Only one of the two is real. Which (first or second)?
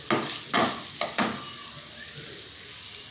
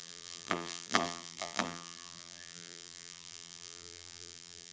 first